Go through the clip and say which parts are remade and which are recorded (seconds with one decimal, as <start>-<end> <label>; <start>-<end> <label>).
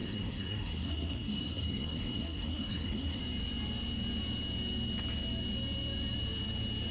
0.0-3.2 remade; 3.2-6.9 recorded